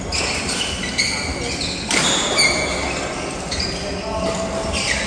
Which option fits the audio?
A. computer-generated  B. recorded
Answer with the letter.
B